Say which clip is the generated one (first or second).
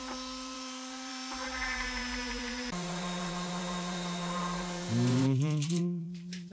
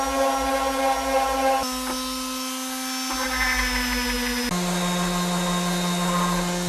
first